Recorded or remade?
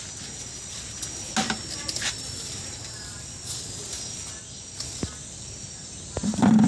recorded